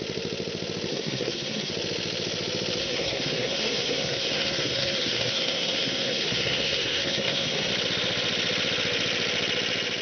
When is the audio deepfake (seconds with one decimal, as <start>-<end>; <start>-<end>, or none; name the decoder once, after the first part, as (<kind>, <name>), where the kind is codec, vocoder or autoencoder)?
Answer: 0.9-1.7 (codec, SNAC); 2.8-7.7